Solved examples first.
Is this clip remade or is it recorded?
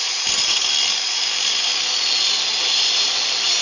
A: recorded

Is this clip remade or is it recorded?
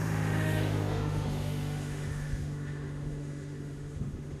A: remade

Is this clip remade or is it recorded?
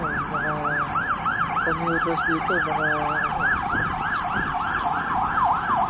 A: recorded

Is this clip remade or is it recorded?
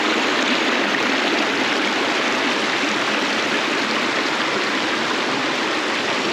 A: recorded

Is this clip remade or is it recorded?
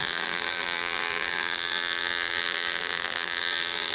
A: remade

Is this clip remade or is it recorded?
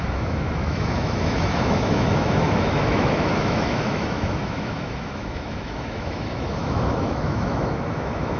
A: remade